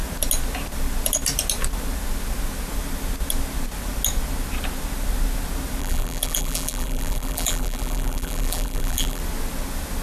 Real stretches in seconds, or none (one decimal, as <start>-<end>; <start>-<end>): 0.0-5.8; 9.2-10.0